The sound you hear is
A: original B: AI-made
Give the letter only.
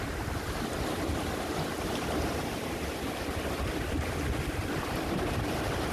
A